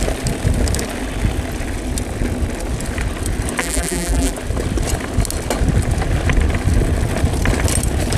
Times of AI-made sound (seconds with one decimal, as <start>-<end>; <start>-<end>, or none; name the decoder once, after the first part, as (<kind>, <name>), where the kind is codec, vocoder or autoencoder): 3.6-4.3 (vocoder, BigVGAN v2)